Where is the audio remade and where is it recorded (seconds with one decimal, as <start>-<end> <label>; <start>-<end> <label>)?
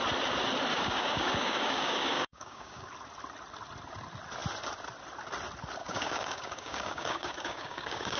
0.0-0.7 recorded; 0.7-2.9 remade; 2.9-5.8 recorded; 5.8-8.2 remade